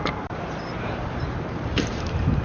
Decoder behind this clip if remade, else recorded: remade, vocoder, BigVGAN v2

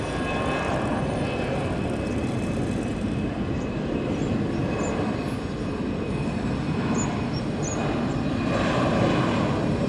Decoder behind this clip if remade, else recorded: recorded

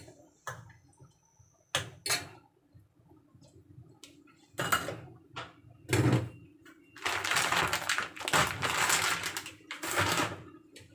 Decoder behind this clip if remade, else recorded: recorded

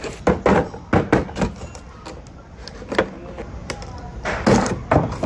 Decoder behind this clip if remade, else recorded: recorded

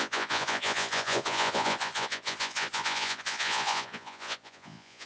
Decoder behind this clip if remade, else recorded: remade, vocoder, Vocos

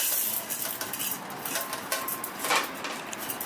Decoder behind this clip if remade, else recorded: recorded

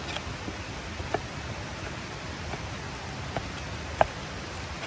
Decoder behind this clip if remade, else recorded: recorded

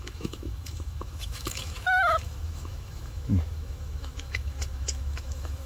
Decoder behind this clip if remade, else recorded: remade, autoencoder, DAC-VAE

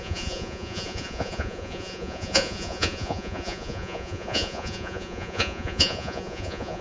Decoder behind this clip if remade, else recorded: remade, vocoder, Vocos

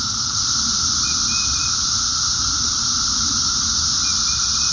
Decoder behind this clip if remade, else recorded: recorded